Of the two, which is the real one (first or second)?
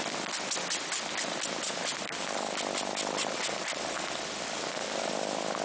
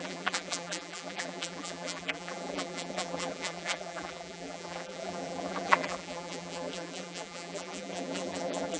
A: first